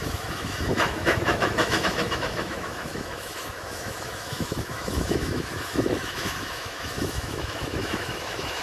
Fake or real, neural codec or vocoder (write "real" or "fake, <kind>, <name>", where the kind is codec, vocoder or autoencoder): fake, autoencoder, DAC-VAE